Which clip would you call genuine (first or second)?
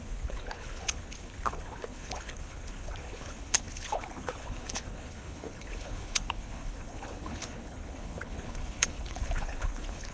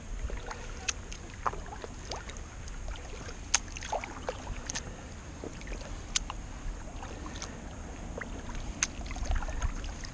second